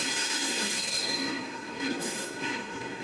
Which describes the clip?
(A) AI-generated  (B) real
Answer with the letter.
A